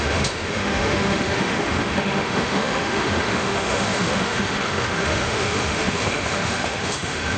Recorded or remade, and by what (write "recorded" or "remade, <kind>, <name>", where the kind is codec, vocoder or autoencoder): remade, autoencoder, DAC-VAE